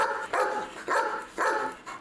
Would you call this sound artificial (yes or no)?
no